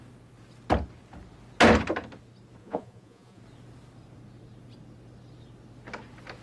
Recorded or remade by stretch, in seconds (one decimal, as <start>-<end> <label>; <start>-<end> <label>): 0.0-2.6 recorded; 2.6-3.4 remade; 3.4-6.4 recorded